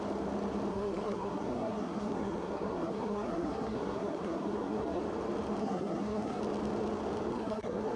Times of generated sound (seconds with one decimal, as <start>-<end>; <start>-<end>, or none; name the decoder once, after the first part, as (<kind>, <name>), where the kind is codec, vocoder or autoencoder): 0.7-5.0 (codec, SNAC); 5.6-6.4; 7.3-8.0